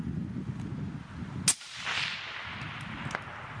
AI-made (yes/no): no